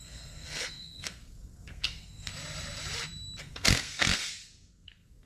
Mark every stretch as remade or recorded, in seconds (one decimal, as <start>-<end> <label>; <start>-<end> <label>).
0.0-2.3 remade; 2.3-3.4 recorded; 3.4-5.3 remade